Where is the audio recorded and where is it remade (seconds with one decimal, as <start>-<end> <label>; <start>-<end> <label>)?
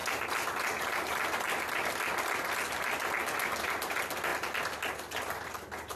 0.0-6.0 recorded